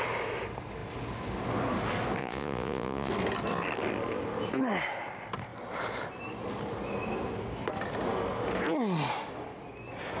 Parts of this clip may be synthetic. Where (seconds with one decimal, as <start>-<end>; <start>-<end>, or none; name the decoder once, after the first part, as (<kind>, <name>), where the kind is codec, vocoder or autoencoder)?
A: 2.2-3.1 (vocoder, Vocos)

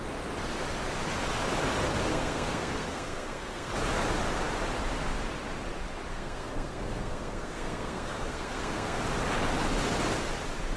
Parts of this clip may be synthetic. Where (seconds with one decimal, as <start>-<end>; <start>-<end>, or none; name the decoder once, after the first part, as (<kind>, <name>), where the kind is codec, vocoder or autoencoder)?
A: 2.1-3.7 (codec, SNAC); 6.1-9.0

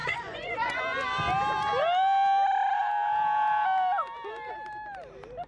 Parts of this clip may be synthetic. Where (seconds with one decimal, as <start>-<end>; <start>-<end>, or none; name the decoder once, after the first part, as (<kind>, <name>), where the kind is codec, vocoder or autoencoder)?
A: 0.0-0.8 (vocoder, Vocos)

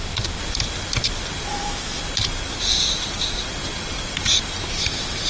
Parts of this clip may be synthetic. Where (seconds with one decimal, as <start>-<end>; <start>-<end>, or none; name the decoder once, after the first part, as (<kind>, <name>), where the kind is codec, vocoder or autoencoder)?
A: 1.5-2.0 (autoencoder, DAC-VAE)

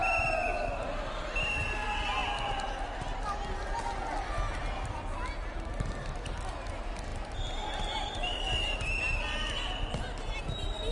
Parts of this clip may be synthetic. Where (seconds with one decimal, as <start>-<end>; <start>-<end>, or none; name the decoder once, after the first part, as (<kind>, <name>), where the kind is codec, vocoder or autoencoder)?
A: none

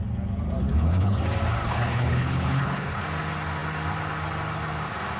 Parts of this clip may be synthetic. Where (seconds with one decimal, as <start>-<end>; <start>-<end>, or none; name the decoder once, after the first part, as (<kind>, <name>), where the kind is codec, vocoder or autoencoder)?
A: 0.7-1.2 (codec, HILCodec); 1.6-3.0

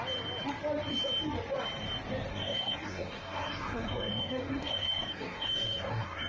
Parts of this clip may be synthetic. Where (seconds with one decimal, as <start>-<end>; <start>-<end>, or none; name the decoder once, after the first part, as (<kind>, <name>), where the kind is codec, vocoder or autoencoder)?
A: 2.3-6.3 (codec, SNAC)

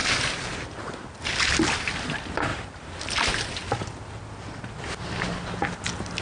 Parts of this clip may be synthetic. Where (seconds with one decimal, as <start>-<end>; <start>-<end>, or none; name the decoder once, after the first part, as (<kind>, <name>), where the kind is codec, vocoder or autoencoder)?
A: 0.0-1.3 (vocoder, BigVGAN v2); 2.5-6.2